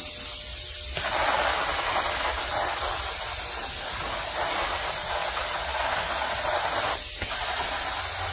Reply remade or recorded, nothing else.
recorded